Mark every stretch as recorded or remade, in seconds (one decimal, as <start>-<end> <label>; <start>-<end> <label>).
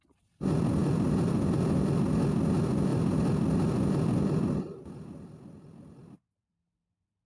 0.0-0.8 recorded; 0.8-2.0 remade; 2.0-2.9 recorded; 2.9-4.8 remade; 4.8-7.3 recorded